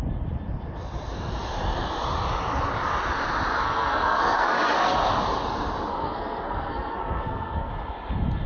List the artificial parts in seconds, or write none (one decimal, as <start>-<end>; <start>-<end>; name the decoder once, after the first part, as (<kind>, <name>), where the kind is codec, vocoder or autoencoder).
3.6-5.0 (codec, SNAC); 5.9-7.7

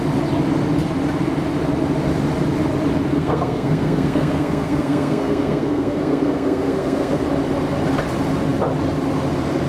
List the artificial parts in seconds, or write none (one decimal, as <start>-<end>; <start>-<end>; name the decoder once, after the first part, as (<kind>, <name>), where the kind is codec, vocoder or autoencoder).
3.1-7.2 (codec, SNAC)